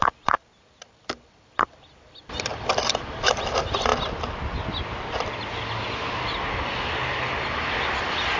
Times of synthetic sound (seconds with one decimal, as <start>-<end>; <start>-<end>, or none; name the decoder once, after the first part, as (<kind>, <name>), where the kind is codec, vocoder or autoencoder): 0.0-3.9 (vocoder, BigVGAN v2); 6.2-8.4